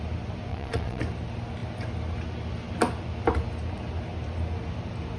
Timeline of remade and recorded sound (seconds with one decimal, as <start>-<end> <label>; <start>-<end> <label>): 0.0-0.5 recorded; 0.5-1.0 remade; 1.0-5.2 recorded